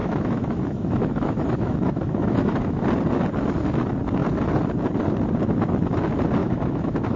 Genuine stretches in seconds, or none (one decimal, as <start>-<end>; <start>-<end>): 2.8-6.4